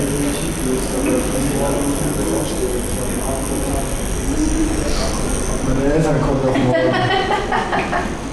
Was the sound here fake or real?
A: real